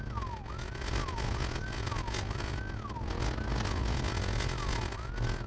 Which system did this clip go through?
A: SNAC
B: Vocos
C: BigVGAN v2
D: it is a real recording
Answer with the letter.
D